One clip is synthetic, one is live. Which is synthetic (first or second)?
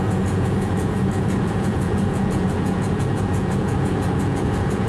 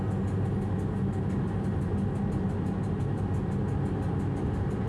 first